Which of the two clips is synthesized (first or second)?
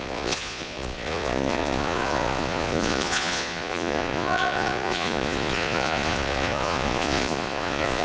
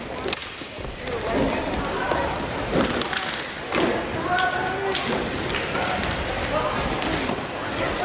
first